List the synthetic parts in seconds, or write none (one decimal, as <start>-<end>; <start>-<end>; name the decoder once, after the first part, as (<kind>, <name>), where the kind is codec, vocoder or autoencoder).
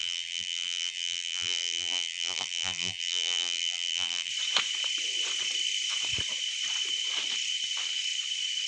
0.0-4.3 (vocoder, BigVGAN v2)